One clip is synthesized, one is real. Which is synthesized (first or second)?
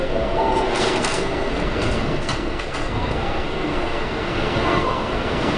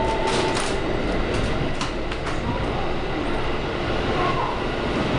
first